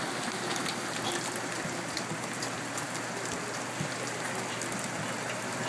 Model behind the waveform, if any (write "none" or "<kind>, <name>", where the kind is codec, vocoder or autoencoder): none